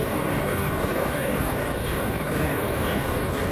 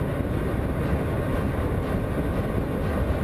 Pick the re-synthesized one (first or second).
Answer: first